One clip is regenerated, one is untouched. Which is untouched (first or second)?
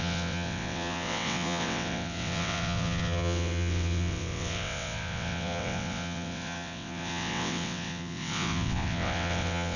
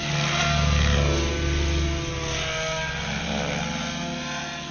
second